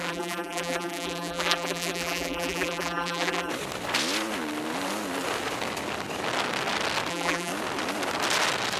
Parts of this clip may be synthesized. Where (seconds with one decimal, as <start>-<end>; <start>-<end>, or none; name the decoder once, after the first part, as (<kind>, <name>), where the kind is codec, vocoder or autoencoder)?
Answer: 0.0-3.5 (vocoder, BigVGAN v2); 7.1-7.5